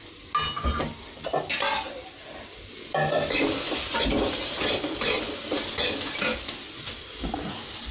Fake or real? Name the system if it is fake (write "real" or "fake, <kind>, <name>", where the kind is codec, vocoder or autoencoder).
real